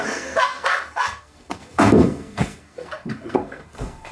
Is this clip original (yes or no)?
no